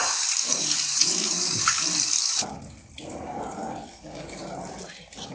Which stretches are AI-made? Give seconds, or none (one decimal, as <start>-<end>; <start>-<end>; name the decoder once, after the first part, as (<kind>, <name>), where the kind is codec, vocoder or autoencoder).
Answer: 0.0-2.5 (codec, DAC); 3.1-4.4

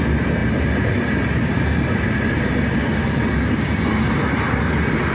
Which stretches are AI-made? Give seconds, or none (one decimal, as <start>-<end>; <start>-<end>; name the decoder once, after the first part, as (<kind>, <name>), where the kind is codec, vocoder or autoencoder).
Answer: none

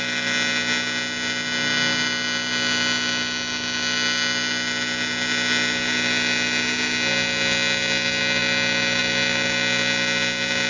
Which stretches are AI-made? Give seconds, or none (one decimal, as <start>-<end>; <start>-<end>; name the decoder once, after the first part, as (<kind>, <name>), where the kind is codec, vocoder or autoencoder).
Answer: none

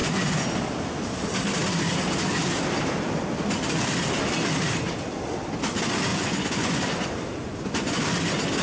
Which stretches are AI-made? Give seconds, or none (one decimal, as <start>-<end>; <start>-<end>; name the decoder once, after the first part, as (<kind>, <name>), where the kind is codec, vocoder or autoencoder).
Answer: 0.0-0.5 (vocoder, Vocos); 6.1-6.8; 7.4-8.0